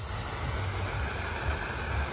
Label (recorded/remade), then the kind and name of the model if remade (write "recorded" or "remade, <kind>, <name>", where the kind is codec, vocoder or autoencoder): recorded